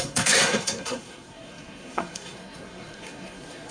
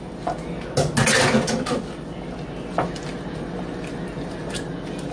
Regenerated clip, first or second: first